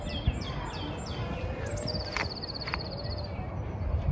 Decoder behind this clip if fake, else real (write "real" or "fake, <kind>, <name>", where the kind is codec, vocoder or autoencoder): real